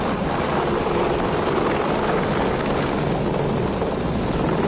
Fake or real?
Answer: real